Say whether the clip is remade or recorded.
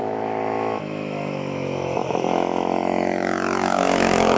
remade